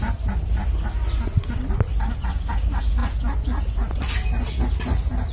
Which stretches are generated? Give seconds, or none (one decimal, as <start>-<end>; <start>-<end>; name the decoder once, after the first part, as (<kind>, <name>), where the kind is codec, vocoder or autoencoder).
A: none